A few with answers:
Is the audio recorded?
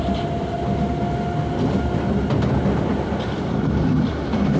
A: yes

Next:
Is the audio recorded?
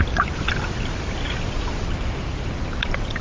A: yes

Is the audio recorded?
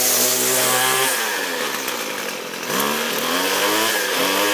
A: yes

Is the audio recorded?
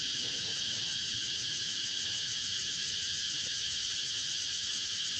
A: no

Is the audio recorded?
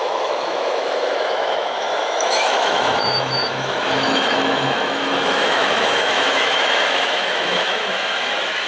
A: no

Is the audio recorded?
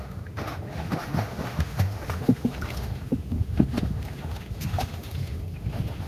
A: no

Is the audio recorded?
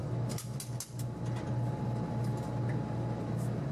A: yes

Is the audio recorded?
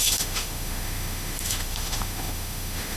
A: no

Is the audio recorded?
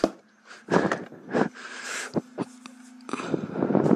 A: yes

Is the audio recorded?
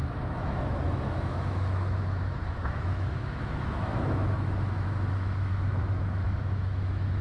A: no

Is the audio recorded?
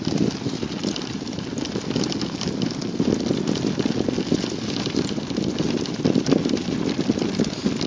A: yes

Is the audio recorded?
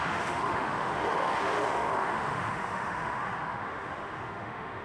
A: no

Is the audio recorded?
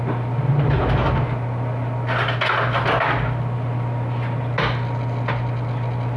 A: yes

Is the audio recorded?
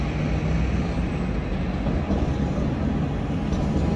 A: yes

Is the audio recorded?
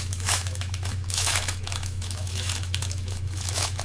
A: no